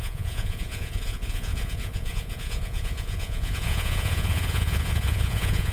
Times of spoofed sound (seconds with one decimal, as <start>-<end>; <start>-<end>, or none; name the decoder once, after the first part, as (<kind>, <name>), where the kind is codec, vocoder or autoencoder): 0.0-5.7 (vocoder, Vocos)